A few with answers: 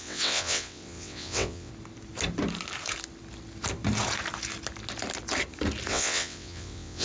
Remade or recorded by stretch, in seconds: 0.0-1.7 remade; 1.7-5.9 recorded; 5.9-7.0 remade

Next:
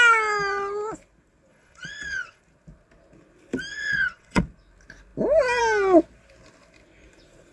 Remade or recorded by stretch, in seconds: 0.0-1.5 recorded; 1.5-2.4 remade; 2.4-3.7 recorded; 3.7-4.4 remade; 4.4-7.5 recorded

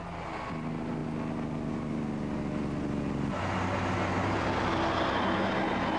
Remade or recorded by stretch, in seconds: 0.0-6.0 recorded

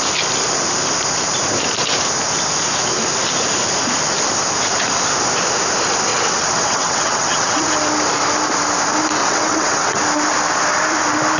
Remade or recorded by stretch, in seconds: 0.0-6.1 recorded; 6.1-7.7 remade; 7.7-9.2 recorded; 9.2-10.0 remade; 10.0-11.4 recorded

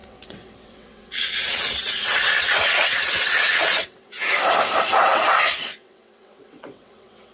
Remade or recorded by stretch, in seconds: 0.0-4.2 remade; 4.2-4.8 recorded; 4.8-7.3 remade

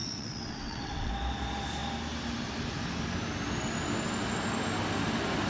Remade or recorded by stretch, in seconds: 0.0-1.1 remade; 1.1-5.5 recorded

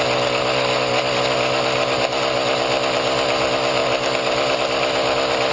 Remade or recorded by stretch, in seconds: 0.0-5.5 recorded